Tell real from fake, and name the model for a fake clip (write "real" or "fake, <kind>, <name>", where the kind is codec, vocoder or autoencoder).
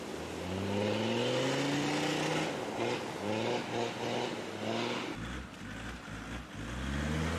real